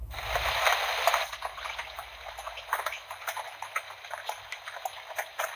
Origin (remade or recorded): recorded